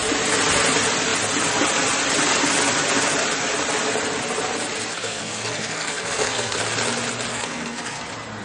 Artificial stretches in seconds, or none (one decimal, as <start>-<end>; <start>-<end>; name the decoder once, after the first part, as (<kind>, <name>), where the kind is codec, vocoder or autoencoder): 4.9-6.6 (codec, SNAC); 7.3-8.0